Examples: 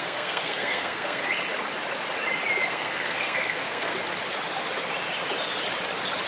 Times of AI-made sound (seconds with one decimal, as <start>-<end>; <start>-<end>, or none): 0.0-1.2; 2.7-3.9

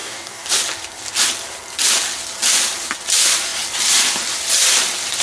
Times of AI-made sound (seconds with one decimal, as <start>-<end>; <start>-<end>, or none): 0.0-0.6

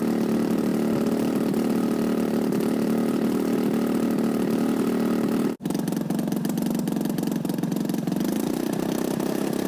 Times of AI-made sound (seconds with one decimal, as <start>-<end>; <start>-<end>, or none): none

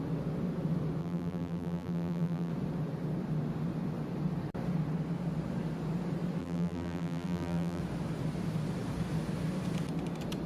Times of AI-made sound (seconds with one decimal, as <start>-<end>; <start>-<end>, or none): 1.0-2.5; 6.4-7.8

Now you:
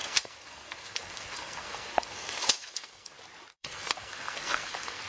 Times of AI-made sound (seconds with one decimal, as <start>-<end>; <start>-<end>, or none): 0.0-3.1; 3.5-5.1

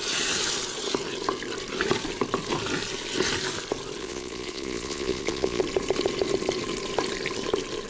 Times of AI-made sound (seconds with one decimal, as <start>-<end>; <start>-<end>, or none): 4.0-5.6